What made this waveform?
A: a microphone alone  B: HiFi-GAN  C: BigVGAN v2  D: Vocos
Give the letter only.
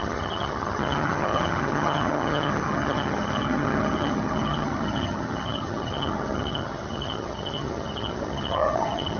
B